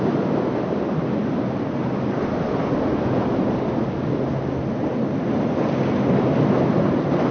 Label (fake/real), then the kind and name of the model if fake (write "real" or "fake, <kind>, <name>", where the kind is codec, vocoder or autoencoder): real